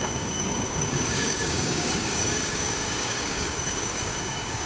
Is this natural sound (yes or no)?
no